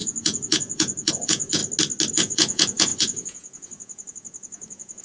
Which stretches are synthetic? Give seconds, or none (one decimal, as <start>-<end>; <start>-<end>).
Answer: 0.0-1.6; 2.1-5.0